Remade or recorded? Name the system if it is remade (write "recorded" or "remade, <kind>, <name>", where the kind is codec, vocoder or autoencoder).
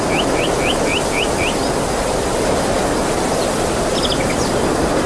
recorded